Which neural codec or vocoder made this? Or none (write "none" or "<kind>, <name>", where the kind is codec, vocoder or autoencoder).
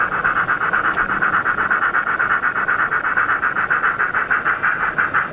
none